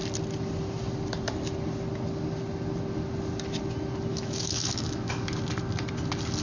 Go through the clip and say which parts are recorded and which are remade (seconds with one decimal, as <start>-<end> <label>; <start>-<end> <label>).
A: 0.0-4.1 recorded; 4.1-5.2 remade; 5.2-6.4 recorded